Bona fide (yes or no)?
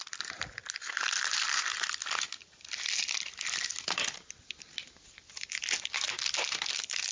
yes